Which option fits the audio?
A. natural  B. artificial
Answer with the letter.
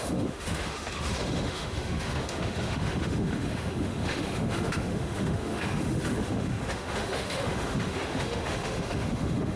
B